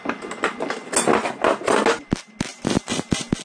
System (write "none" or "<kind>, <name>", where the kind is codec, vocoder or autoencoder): none